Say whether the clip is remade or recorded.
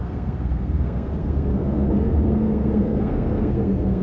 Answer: remade